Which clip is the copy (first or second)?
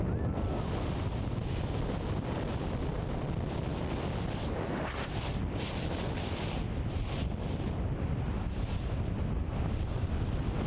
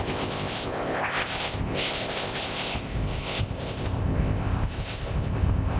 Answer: second